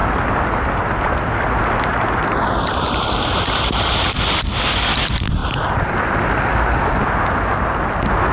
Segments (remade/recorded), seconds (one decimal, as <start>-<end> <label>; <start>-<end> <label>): 0.0-8.3 recorded